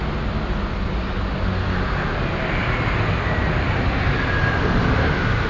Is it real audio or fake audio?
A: real